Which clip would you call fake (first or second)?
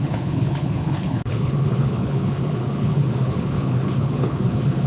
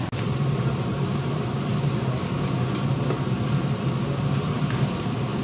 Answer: first